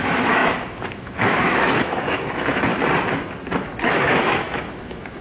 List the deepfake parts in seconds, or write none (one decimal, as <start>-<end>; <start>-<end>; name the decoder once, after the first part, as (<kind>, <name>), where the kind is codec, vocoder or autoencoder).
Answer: 0.0-2.7 (autoencoder, DAC-VAE); 3.9-5.2